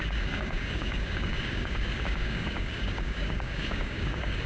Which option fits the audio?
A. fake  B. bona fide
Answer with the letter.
A